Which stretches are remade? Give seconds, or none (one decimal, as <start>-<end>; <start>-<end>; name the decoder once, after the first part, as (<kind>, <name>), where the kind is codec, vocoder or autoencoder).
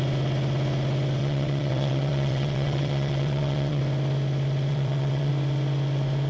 1.2-3.8 (vocoder, WaveNeXt); 4.7-5.3